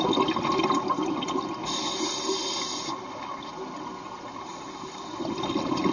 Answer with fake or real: real